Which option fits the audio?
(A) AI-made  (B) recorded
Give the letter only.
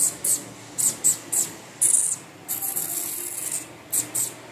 B